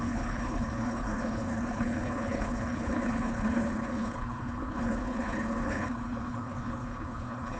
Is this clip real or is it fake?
fake